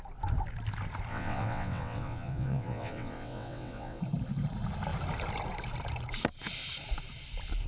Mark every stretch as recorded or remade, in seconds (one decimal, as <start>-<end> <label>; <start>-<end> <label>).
0.0-1.1 recorded; 1.1-4.0 remade; 4.0-7.7 recorded